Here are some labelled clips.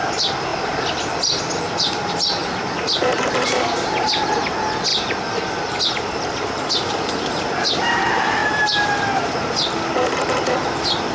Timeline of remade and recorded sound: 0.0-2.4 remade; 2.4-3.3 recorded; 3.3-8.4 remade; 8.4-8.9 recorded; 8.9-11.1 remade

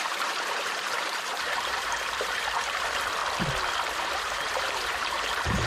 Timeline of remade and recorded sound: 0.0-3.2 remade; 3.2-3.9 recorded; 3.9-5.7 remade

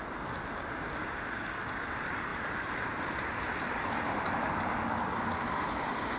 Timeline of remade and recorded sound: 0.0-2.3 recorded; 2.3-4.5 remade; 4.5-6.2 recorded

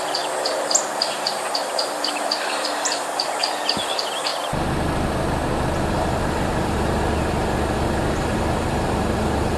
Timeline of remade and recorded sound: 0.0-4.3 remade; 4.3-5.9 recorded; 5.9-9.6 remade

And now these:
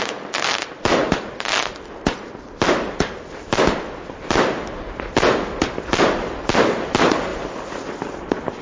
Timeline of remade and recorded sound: 0.0-8.6 recorded